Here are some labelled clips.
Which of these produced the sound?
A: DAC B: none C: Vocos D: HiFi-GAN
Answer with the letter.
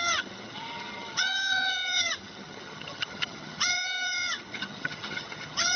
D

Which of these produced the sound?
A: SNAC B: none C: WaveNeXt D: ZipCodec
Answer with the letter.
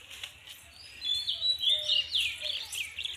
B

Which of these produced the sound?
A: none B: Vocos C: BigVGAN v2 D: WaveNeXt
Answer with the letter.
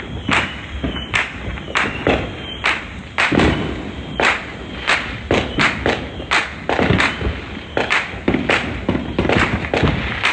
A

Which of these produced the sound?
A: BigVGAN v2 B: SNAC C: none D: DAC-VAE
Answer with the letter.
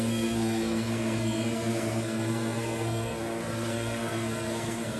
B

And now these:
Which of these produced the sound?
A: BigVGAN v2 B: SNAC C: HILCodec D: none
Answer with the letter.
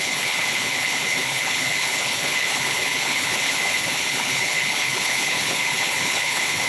C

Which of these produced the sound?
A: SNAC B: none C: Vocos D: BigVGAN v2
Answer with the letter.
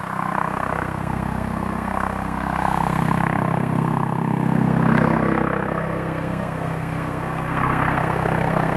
A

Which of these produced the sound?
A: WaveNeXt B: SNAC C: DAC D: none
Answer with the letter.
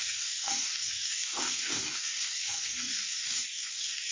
C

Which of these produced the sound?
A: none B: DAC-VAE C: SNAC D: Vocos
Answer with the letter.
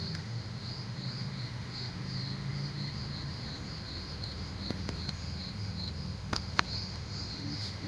B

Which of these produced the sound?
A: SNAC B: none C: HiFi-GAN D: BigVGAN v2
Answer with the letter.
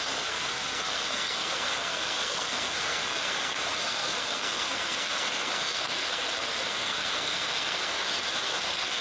A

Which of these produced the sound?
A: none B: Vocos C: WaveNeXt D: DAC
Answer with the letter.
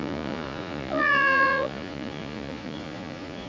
B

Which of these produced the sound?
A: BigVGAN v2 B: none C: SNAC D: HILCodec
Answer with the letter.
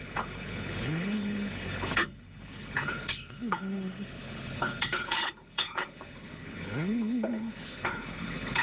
D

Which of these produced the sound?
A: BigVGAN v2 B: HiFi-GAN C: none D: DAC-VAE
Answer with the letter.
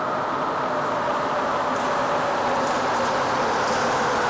C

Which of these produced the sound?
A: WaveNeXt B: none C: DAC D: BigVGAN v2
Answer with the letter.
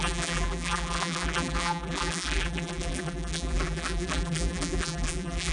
D